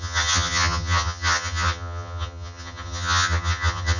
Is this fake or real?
fake